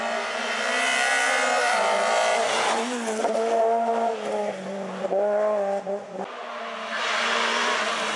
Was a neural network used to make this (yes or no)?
no